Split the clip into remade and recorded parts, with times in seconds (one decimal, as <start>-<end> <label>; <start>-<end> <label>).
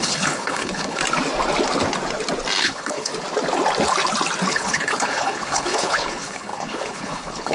0.0-1.0 remade; 1.0-2.6 recorded; 2.6-3.1 remade; 3.1-4.5 recorded; 4.5-7.5 remade